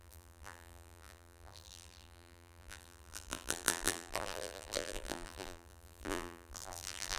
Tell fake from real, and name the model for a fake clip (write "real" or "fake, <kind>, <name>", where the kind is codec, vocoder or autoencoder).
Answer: fake, vocoder, BigVGAN v2